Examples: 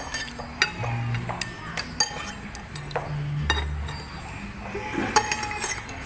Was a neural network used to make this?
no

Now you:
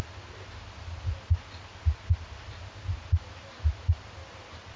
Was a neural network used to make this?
no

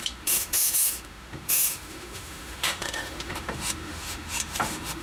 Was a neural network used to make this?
yes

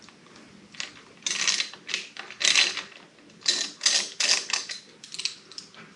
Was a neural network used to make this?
no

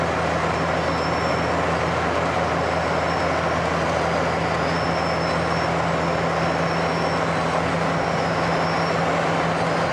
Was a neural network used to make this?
no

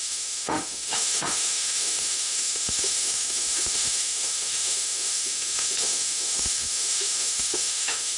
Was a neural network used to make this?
yes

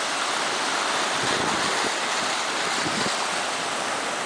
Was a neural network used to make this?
no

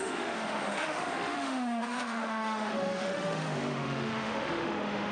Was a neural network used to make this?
yes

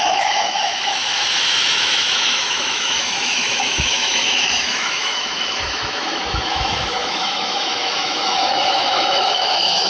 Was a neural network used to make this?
yes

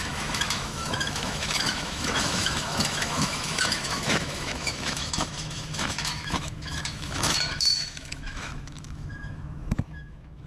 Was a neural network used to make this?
yes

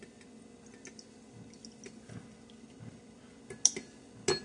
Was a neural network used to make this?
no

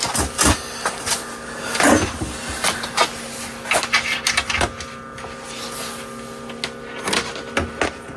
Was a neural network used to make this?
no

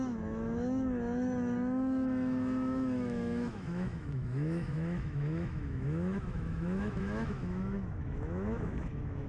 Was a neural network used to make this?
yes